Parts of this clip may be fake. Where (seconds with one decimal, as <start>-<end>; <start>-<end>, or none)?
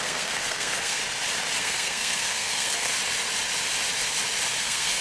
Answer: 0.0-1.0; 1.6-2.9; 4.6-5.0